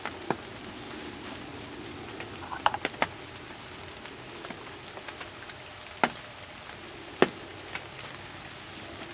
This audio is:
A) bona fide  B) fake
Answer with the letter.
A